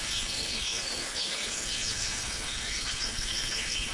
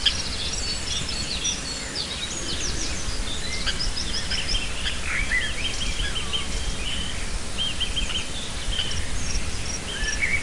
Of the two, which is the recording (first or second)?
second